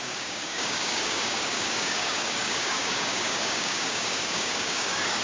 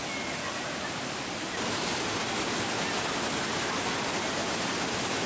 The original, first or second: second